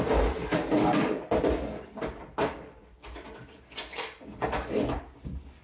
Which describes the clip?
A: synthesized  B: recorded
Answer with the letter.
B